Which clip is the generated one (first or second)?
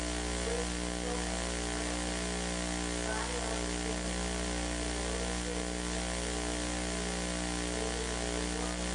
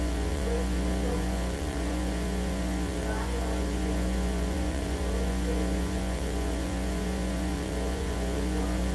second